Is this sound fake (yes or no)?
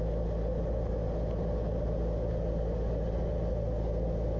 no